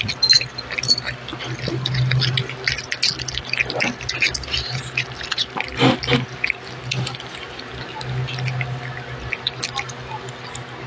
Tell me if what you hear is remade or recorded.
recorded